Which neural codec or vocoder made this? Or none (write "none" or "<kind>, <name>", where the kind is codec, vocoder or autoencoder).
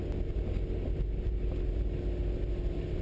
none